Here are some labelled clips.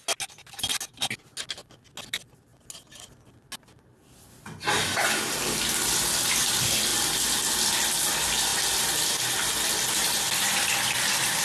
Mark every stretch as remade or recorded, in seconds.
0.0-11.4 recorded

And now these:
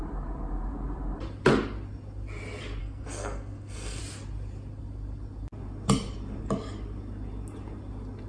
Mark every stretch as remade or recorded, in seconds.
0.0-2.8 recorded; 2.8-4.0 remade; 4.0-8.3 recorded

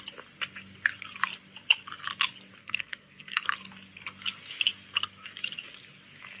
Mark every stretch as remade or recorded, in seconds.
0.0-2.6 recorded; 2.6-3.4 remade; 3.4-6.4 recorded